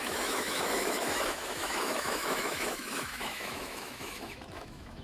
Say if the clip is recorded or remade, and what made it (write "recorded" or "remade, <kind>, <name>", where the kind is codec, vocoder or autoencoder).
remade, autoencoder, DAC-VAE